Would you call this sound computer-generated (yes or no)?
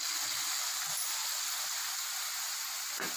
no